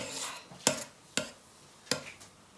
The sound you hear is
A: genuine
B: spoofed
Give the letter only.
A